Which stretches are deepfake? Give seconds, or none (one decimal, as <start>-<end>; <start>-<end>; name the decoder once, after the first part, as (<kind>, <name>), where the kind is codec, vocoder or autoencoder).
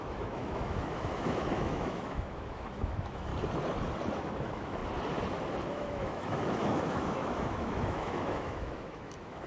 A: 0.0-3.3 (autoencoder, DAC-VAE); 4.3-4.8; 5.7-9.5